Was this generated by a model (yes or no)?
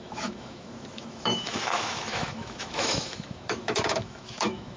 yes